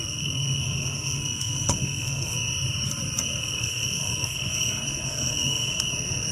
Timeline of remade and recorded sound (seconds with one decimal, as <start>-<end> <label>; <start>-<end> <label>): 0.0-2.5 remade; 2.5-3.2 recorded; 3.2-6.3 remade